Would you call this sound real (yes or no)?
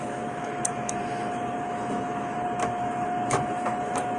no